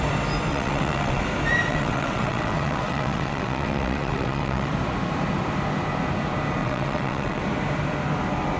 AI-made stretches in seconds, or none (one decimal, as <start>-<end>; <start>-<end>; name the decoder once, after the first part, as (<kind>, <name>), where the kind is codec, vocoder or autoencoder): 0.5-1.2 (vocoder, WaveNeXt); 1.7-4.7; 6.6-7.4